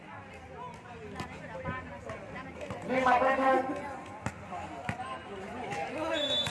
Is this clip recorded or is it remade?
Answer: recorded